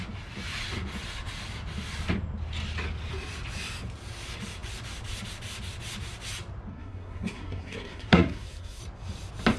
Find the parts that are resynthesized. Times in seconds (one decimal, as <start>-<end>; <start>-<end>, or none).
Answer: 6.7-8.8